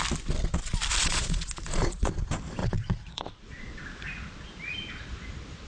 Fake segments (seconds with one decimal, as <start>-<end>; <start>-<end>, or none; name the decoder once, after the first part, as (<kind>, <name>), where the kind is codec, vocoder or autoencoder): 1.0-2.1 (vocoder, Vocos); 2.6-3.8